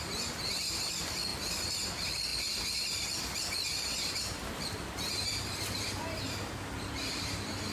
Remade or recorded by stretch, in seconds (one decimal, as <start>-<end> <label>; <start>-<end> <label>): 0.0-7.7 recorded

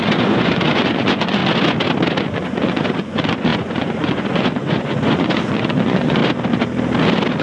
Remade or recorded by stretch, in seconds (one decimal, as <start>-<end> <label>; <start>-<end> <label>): 0.0-1.4 remade; 1.4-2.2 recorded; 2.2-6.2 remade; 6.2-7.4 recorded

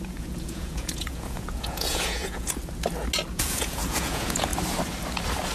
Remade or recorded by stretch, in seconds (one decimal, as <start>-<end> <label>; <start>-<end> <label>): 0.0-2.6 remade; 2.6-3.3 recorded; 3.3-4.5 remade; 4.5-5.5 recorded